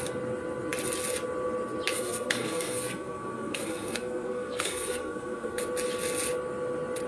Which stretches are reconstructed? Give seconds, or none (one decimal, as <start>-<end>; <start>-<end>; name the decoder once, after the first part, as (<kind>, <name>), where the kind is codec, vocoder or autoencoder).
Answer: 1.9-5.6 (codec, SNAC)